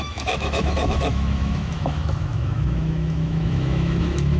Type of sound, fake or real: fake